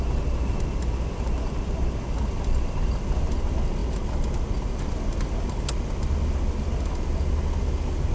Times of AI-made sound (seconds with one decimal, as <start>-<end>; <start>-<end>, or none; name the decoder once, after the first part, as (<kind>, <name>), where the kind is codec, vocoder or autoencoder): none